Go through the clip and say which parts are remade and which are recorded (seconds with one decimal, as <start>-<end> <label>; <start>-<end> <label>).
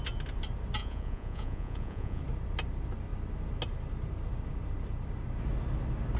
0.0-0.8 recorded; 0.8-2.2 remade; 2.2-6.2 recorded